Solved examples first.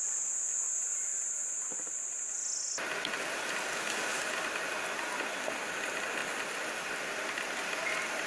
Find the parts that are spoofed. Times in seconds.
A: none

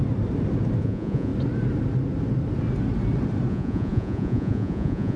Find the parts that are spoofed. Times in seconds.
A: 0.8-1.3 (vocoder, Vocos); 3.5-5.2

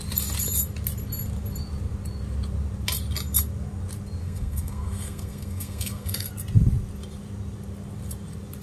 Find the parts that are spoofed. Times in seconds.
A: 4.2-6.3 (codec, SNAC)

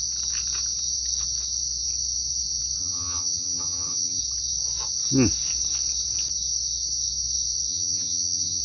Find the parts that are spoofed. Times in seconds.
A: 2.8-4.2 (vocoder, HiFi-GAN); 7.7-8.6

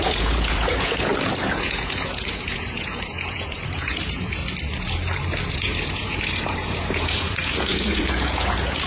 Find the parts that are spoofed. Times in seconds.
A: 0.0-1.1 (vocoder, Vocos); 1.6-4.4; 5.5-8.9